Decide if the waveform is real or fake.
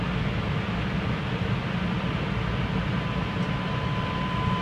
real